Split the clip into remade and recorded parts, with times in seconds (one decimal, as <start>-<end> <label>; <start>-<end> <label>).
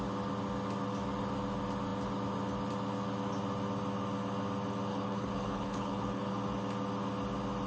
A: 0.0-4.9 recorded; 4.9-6.3 remade; 6.3-7.7 recorded